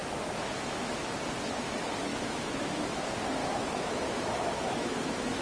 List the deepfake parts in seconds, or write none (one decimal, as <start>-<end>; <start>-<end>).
0.0-1.1; 2.1-3.0; 3.4-5.4